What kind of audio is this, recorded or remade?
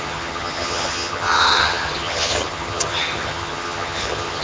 remade